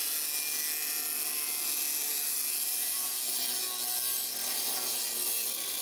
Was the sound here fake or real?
real